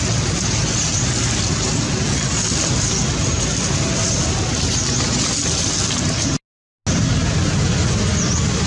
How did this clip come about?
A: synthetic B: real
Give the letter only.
B